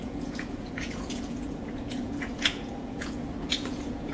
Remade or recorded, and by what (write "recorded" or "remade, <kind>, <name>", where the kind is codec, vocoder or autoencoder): remade, vocoder, Vocos